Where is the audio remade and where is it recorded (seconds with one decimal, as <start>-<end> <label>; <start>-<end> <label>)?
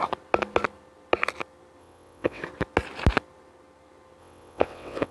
0.0-1.8 recorded; 1.8-2.4 remade; 2.4-4.2 recorded; 4.2-5.1 remade